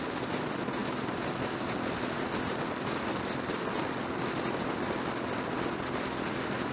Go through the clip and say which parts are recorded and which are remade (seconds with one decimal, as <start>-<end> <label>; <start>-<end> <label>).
0.0-6.7 recorded